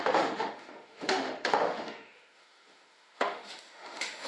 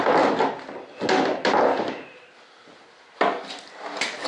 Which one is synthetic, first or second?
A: first